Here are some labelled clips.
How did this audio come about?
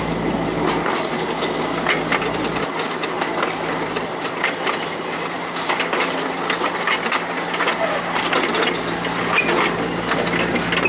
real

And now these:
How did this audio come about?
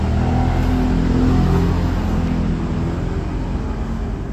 real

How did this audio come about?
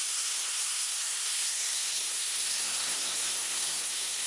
fake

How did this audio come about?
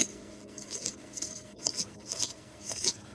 fake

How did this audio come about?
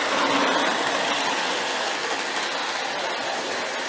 real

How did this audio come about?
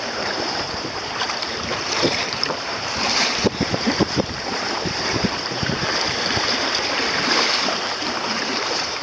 fake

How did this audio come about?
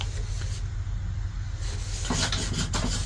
real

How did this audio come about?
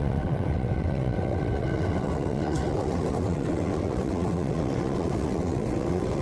fake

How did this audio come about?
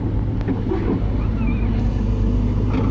real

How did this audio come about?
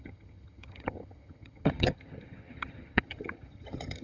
fake